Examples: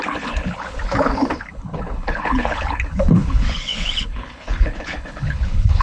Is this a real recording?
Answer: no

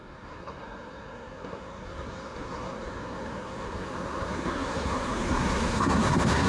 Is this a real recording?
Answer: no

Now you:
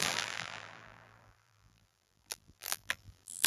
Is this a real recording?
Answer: no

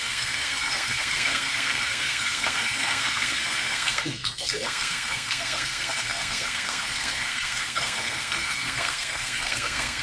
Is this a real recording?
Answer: no